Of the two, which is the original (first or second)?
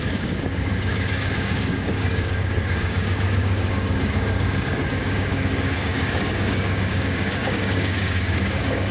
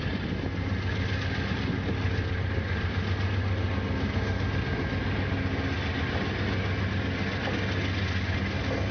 second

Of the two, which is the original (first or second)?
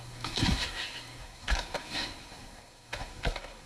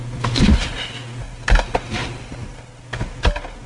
second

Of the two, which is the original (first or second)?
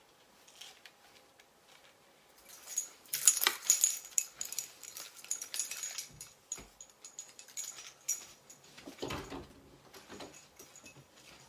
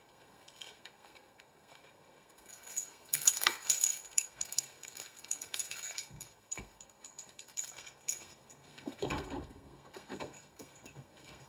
first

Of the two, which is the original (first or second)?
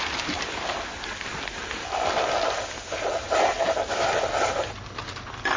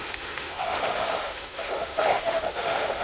first